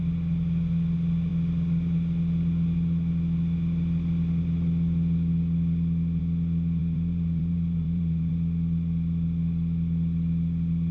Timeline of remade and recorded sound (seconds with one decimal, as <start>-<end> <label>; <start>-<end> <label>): 0.0-6.8 recorded; 6.8-8.3 remade; 8.3-10.9 recorded